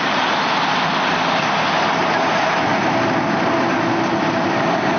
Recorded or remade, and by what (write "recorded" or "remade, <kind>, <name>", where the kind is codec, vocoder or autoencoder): recorded